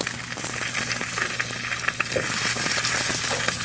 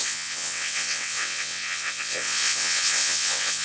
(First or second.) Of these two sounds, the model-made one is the second